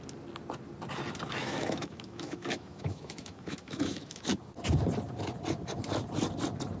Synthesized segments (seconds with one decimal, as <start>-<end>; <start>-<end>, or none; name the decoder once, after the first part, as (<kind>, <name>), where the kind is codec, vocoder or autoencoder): 1.4-4.3 (autoencoder, DAC-VAE)